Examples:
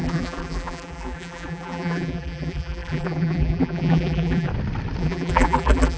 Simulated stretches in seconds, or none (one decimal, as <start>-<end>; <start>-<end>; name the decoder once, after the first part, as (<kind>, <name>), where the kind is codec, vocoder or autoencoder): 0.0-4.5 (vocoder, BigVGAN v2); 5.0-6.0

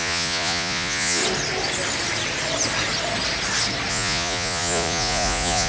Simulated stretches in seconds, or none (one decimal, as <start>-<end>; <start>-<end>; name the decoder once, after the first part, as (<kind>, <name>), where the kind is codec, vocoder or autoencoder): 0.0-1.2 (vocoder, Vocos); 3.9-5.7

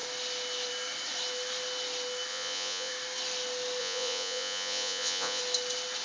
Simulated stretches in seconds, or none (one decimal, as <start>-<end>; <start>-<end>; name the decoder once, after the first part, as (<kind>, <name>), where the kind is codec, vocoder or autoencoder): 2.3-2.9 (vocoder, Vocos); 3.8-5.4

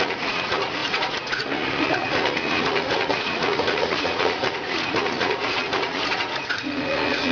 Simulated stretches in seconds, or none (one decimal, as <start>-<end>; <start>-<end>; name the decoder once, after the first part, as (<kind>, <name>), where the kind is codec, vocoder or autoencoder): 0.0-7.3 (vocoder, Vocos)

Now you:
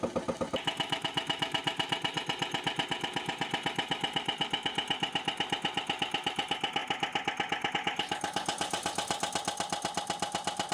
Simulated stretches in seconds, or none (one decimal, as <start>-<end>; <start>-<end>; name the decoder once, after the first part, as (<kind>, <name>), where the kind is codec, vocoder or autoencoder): none

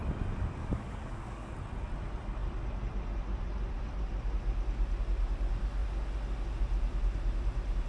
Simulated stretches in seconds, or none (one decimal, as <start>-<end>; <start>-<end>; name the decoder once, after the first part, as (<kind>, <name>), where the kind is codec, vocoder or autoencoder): 0.6-1.5 (codec, DAC)

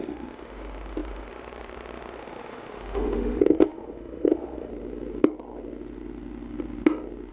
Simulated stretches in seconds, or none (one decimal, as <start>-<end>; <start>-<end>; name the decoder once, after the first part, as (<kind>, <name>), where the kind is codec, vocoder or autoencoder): 0.0-4.7 (autoencoder, DAC-VAE)